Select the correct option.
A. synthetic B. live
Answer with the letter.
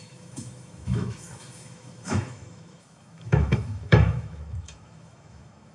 A